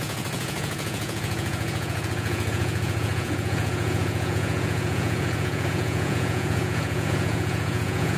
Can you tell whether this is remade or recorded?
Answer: remade